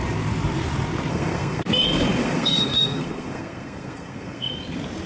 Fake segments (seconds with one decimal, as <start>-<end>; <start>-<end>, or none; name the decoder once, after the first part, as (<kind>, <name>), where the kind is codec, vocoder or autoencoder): 1.1-1.7 (codec, SNAC); 2.2-4.5